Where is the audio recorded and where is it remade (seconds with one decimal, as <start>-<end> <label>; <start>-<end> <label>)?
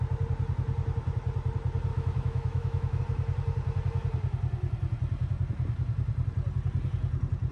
0.0-1.9 recorded; 1.9-3.0 remade; 3.0-7.5 recorded